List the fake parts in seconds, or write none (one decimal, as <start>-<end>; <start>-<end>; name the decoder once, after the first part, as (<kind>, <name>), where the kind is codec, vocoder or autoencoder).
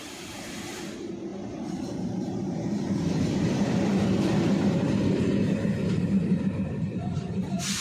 0.0-3.9 (vocoder, BigVGAN v2); 4.5-7.8